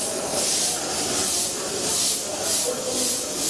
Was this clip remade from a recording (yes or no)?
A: yes